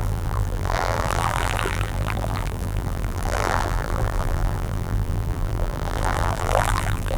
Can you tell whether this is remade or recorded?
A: remade